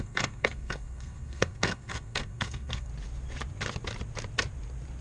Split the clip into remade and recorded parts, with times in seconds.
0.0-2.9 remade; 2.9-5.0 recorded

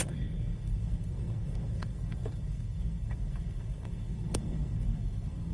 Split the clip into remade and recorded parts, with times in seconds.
0.0-5.5 remade

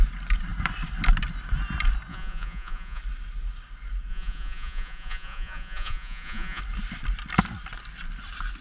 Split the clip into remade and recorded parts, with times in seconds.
0.0-2.1 recorded; 2.1-3.0 remade; 3.0-4.1 recorded; 4.1-6.6 remade; 6.6-8.6 recorded

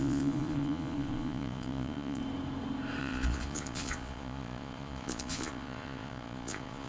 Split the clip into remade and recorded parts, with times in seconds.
0.0-2.2 remade; 2.2-3.0 recorded; 3.0-6.9 remade

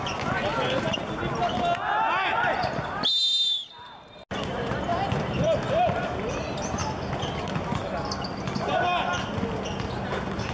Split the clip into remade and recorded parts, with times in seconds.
0.0-0.5 recorded; 0.5-1.1 remade; 1.1-3.3 recorded; 3.3-4.1 remade; 4.1-4.9 recorded; 4.9-6.3 remade; 6.3-10.5 recorded

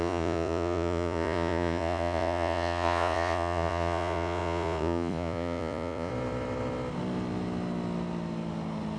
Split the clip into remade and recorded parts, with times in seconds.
0.0-6.1 remade; 6.1-9.0 recorded